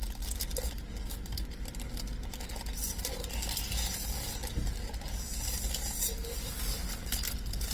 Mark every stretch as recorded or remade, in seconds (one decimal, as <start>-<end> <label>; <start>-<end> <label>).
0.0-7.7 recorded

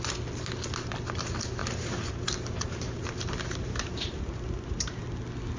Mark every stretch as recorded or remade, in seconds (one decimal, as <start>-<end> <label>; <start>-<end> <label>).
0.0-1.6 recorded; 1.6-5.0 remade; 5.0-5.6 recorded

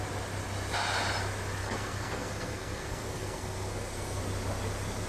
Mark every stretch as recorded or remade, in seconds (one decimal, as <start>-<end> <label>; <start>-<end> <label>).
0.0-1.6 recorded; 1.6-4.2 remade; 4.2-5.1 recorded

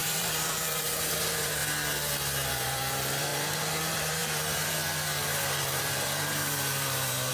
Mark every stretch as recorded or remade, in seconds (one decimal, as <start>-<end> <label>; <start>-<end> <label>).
0.0-1.6 remade; 1.6-2.5 recorded; 2.5-7.3 remade

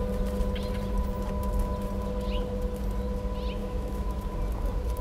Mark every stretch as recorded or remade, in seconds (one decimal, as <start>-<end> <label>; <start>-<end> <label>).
0.0-3.6 recorded; 3.6-4.2 remade; 4.2-5.0 recorded